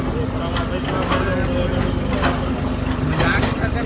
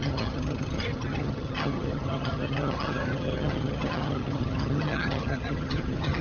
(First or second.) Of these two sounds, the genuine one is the first